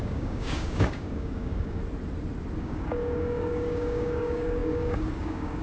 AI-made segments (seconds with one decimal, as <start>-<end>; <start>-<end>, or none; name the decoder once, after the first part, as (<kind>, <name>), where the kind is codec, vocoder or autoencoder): 0.0-1.8 (codec, DAC); 2.6-5.6